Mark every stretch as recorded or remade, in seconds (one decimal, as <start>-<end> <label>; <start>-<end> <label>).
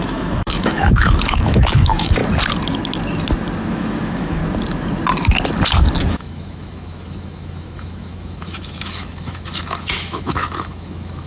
0.0-2.2 remade; 2.2-3.7 recorded; 3.7-4.4 remade; 4.4-6.1 recorded; 6.1-11.3 remade